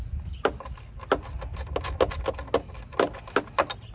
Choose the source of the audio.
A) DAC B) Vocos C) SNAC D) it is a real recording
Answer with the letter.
D